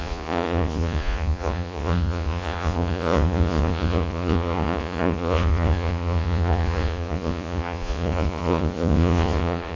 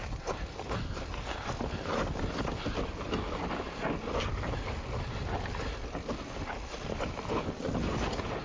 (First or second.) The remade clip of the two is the first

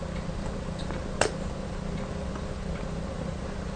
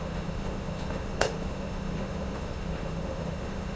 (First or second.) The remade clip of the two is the second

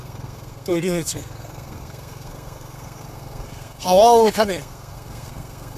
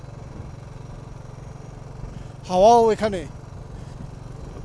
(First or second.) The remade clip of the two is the first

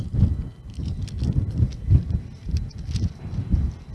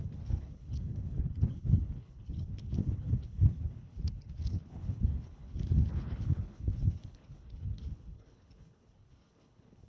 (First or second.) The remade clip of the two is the second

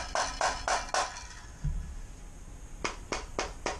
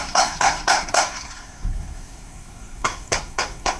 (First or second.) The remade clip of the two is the second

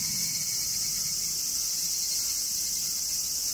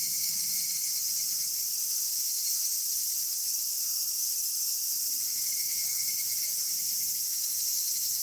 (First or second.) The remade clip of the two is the second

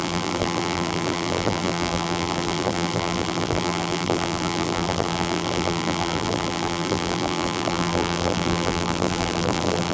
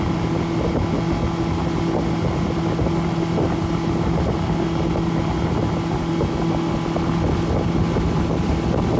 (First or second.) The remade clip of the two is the first